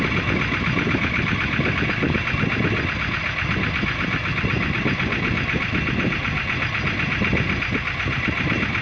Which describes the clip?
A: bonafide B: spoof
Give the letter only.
A